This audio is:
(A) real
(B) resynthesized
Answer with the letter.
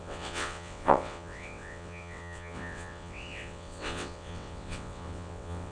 B